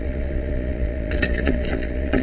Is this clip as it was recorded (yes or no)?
no